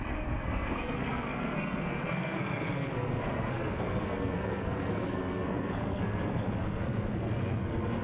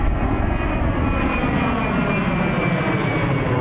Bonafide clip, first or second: second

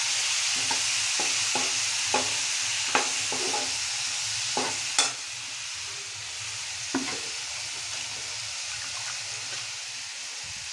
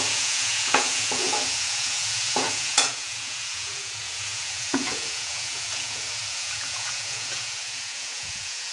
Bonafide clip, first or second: first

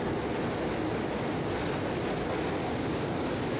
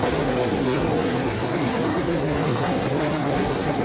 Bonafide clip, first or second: first